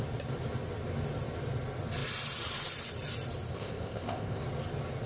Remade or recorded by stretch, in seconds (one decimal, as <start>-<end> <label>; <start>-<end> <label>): 0.0-3.5 recorded; 3.5-4.4 remade; 4.4-5.1 recorded